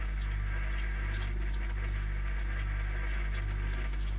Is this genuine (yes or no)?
yes